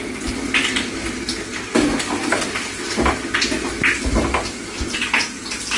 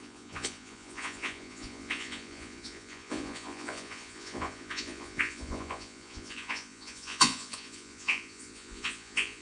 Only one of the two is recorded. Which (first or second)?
first